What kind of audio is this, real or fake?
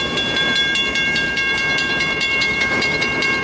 fake